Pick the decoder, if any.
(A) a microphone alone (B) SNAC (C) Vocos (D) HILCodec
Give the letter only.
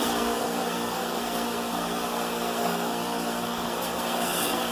B